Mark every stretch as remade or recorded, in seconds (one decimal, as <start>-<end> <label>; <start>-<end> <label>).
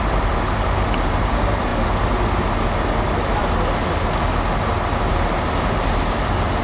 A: 0.0-6.6 recorded